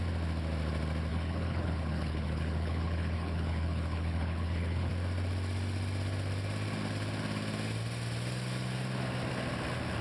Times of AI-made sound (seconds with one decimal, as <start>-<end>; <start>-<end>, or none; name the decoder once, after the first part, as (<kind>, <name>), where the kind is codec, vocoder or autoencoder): 1.1-4.9 (codec, HILCodec)